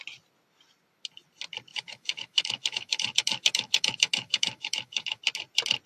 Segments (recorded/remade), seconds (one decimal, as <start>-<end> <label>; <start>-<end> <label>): 0.0-1.7 recorded; 1.7-5.2 remade; 5.2-5.9 recorded